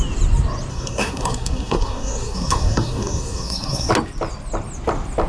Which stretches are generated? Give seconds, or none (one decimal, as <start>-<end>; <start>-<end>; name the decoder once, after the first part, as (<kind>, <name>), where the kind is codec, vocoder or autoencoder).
0.7-3.9 (codec, SNAC)